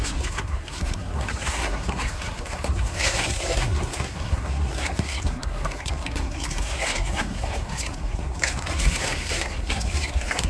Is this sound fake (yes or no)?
yes